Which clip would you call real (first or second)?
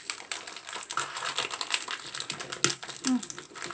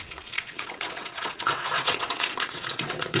first